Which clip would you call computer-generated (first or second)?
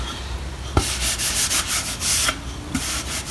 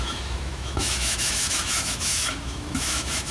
second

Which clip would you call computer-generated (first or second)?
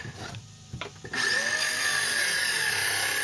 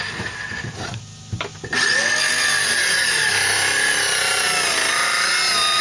first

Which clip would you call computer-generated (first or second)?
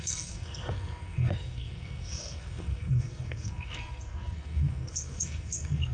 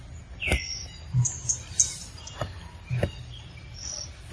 first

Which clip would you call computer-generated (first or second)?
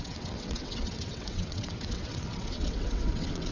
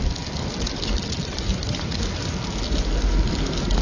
first